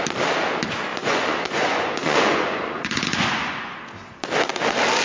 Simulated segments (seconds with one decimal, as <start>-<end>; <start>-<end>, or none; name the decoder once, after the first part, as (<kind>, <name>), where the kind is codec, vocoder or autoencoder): 0.9-3.8 (vocoder, Vocos)